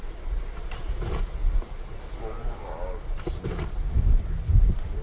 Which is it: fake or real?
real